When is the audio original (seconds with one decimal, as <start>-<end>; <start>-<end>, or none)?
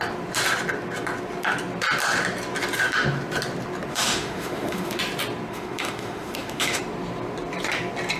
0.0-3.9; 5.0-5.5; 6.8-8.2